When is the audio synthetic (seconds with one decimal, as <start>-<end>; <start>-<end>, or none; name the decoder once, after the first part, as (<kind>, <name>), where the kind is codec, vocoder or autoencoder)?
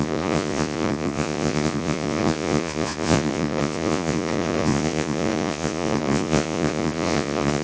0.0-7.6 (vocoder, Vocos)